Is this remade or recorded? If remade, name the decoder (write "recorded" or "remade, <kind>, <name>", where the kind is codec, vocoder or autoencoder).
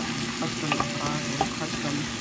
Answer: recorded